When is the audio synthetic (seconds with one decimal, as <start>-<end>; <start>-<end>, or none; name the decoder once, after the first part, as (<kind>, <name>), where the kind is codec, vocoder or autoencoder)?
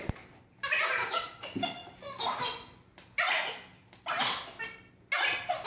none